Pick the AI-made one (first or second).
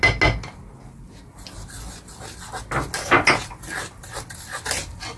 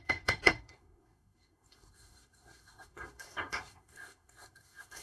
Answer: second